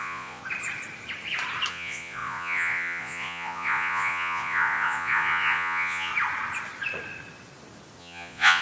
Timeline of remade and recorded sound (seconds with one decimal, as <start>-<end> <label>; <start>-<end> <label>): 0.0-0.4 remade; 0.4-1.7 recorded; 1.7-6.1 remade; 6.1-8.0 recorded; 8.0-8.6 remade